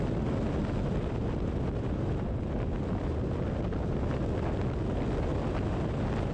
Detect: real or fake real